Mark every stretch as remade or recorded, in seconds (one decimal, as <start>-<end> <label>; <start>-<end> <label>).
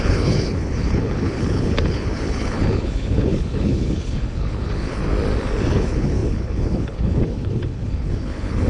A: 0.0-5.0 remade; 5.0-5.7 recorded; 5.7-8.7 remade